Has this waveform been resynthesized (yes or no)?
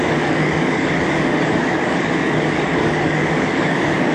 yes